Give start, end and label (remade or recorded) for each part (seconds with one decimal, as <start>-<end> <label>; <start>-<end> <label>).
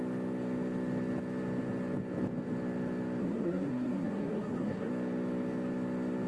0.0-3.2 recorded; 3.2-4.9 remade; 4.9-6.3 recorded